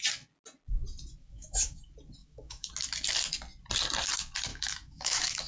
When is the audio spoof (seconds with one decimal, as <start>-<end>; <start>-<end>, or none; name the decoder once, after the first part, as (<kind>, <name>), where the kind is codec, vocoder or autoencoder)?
1.2-1.8 (autoencoder, DAC-VAE); 2.2-2.7; 4.5-5.5